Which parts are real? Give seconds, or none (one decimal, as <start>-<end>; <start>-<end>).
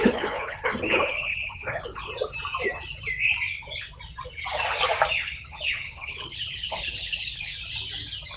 2.1-5.2; 7.5-8.4